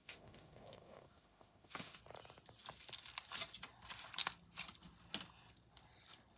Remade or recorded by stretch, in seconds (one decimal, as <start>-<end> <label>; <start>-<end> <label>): 0.0-2.0 remade; 2.0-6.4 recorded